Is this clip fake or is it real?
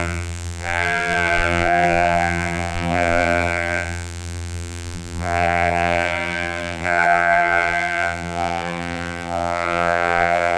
fake